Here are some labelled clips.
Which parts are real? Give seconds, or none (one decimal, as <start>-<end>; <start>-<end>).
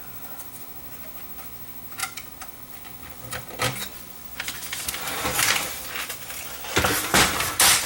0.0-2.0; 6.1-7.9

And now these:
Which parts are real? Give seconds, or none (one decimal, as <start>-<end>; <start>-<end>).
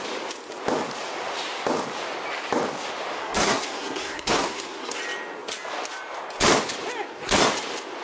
0.0-3.2; 5.0-8.0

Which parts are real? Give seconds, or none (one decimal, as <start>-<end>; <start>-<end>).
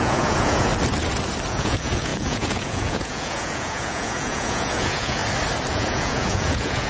0.7-1.5; 5.2-5.7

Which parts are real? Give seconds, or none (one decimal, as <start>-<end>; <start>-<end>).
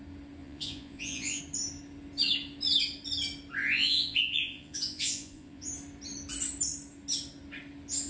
0.0-0.4; 1.4-3.6; 5.7-8.1